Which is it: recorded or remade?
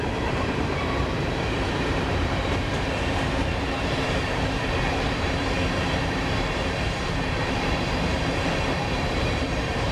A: remade